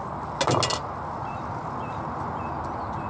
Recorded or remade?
recorded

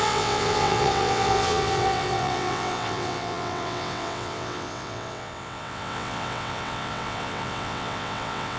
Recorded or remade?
remade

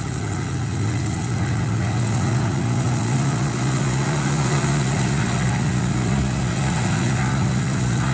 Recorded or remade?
remade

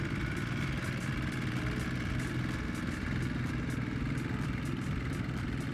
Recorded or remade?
recorded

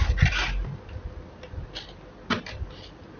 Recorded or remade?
recorded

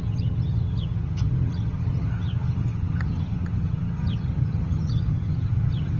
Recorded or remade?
remade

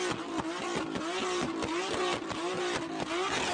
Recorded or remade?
recorded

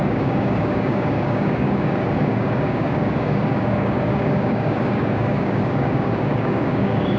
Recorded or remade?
remade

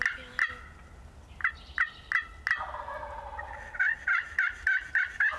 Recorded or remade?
recorded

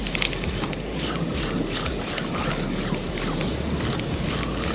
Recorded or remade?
recorded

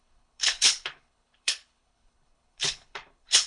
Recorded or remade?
remade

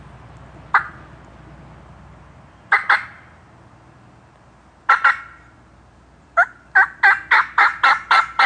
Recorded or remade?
recorded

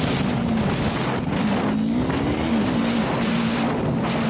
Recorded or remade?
recorded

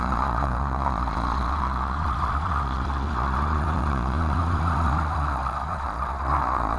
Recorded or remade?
remade